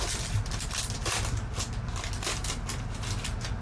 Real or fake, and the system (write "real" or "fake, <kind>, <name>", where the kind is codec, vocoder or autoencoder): real